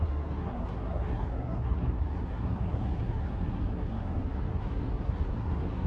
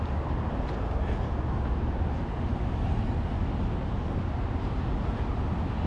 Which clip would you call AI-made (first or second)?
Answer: first